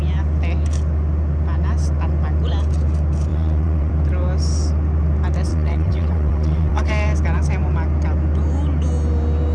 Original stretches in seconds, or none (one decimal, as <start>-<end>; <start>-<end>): 0.0-3.3; 3.9-5.5; 6.9-9.5